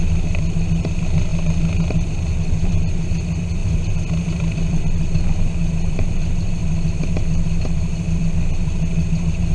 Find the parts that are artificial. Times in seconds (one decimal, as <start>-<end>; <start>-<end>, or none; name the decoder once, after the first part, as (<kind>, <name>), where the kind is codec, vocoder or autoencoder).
3.6-4.8 (vocoder, BigVGAN v2)